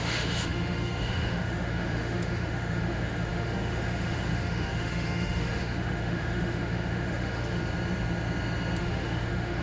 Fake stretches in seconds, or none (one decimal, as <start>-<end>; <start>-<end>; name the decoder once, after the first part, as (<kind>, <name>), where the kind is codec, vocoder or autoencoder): 0.0-7.6 (autoencoder, DAC-VAE); 8.8-9.6